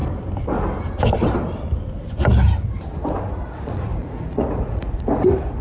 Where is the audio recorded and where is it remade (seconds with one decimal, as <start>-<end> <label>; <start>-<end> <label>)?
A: 0.0-3.4 recorded; 3.4-5.6 remade